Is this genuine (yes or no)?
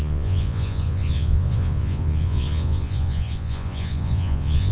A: no